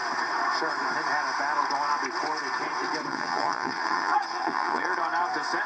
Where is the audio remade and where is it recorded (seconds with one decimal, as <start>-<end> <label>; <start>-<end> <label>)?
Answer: 0.0-3.1 recorded; 3.1-5.0 remade; 5.0-5.7 recorded